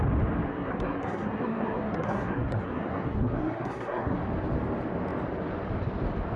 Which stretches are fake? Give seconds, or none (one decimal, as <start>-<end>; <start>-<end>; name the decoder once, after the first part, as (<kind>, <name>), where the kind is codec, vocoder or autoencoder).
0.5-4.2 (codec, SNAC)